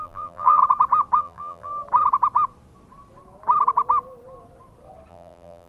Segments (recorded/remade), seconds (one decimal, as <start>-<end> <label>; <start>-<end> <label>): 0.0-0.6 remade; 0.6-1.2 recorded; 1.2-1.7 remade; 1.7-5.1 recorded; 5.1-5.7 remade